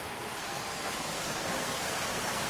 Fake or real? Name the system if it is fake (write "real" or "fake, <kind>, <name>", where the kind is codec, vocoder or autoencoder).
fake, codec, SNAC